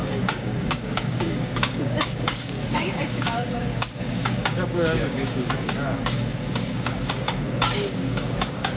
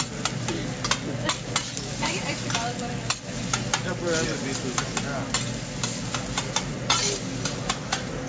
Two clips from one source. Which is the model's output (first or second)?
first